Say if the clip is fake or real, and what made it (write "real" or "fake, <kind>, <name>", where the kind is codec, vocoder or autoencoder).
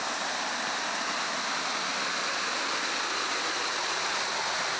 real